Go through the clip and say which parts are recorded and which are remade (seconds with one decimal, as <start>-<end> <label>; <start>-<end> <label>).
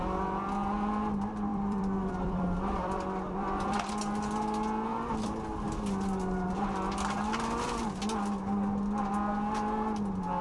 0.0-1.5 recorded; 1.5-3.9 remade; 3.9-10.4 recorded